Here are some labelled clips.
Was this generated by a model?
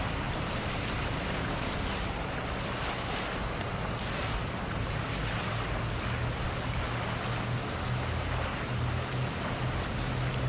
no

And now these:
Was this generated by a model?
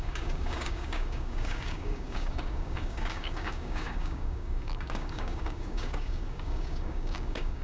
yes